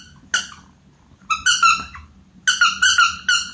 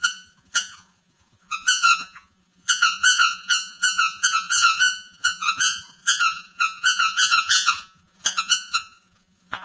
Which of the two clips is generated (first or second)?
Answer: second